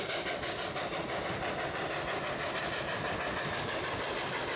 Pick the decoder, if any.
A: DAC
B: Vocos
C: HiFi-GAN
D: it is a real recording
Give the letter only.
D